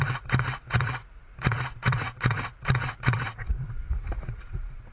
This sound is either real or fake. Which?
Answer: fake